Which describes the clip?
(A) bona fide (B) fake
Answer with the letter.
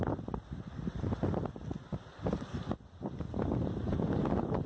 A